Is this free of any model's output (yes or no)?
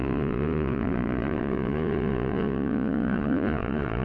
no